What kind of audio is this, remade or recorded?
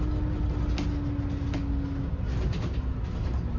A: recorded